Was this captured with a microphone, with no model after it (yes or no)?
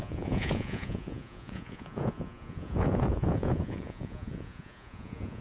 no